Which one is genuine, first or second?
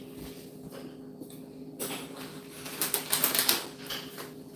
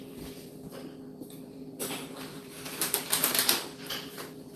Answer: first